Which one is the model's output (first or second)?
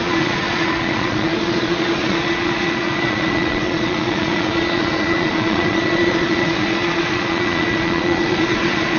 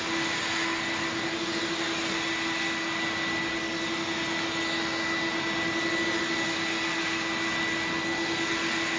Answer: first